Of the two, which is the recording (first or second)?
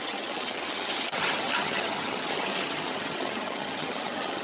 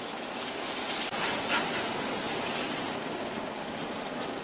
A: second